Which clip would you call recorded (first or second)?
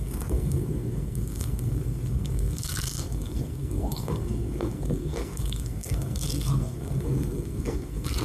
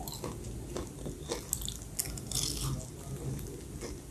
second